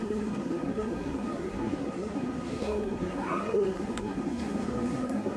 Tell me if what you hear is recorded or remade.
remade